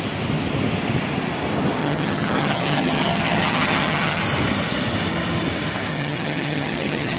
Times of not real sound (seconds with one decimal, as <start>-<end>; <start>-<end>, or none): 1.8-4.2; 5.9-7.2